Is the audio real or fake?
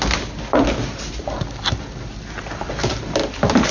real